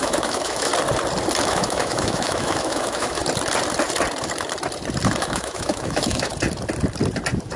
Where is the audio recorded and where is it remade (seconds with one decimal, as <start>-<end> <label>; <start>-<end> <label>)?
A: 0.0-0.7 remade; 0.7-1.4 recorded; 1.4-3.2 remade; 3.2-5.2 recorded; 5.2-6.3 remade; 6.3-7.6 recorded